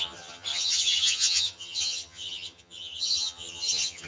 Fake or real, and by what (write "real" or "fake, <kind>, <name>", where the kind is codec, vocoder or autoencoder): fake, vocoder, HiFi-GAN